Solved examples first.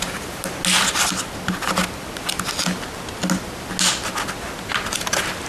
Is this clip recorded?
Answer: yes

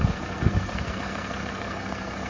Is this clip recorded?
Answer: no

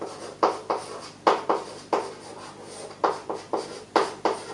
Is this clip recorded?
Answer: yes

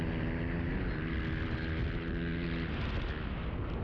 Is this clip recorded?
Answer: yes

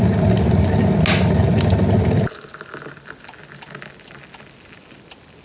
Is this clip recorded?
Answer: yes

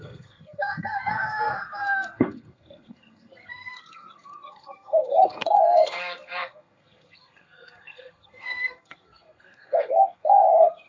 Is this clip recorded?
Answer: no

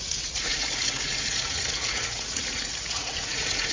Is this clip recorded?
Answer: no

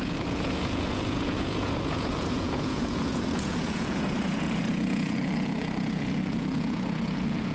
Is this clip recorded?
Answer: no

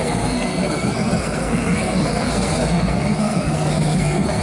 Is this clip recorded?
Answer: no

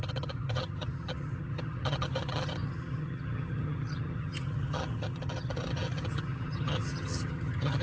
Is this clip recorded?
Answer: no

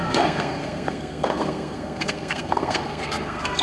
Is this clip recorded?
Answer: no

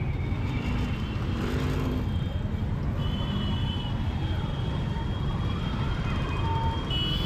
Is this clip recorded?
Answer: yes